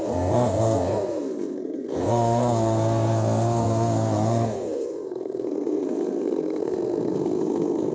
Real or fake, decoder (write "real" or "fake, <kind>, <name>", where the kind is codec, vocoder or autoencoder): fake, codec, SNAC